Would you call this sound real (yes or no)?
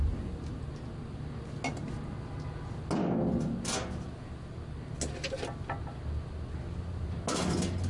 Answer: yes